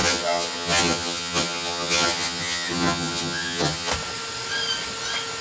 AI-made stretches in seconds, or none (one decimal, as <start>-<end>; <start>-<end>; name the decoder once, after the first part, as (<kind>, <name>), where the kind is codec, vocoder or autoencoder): 0.0-3.9 (vocoder, HiFi-GAN)